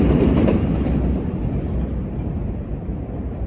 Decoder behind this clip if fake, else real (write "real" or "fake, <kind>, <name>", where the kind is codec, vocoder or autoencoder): real